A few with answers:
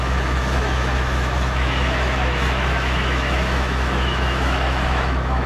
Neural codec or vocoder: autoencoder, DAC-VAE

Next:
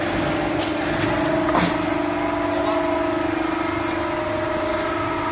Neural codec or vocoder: none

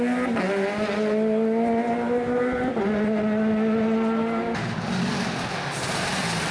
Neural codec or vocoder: none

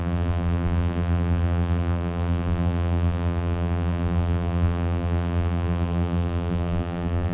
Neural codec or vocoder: vocoder, BigVGAN v2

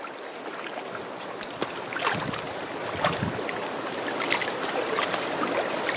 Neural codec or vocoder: none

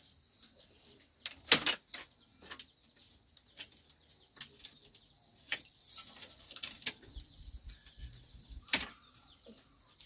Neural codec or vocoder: none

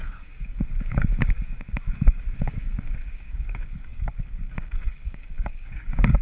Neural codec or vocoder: codec, DAC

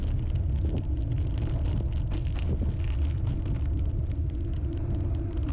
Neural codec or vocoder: none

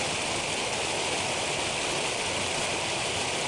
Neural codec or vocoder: none